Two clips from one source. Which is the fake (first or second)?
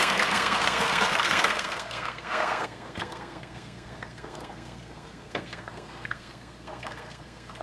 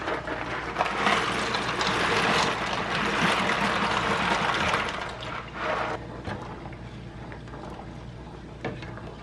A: first